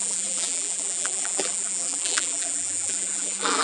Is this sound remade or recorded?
remade